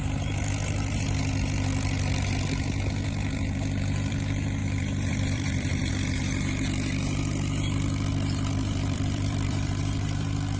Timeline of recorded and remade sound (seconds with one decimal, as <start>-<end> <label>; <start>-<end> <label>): 0.0-4.6 recorded; 4.6-5.9 remade; 5.9-8.6 recorded; 8.6-9.7 remade; 9.7-10.6 recorded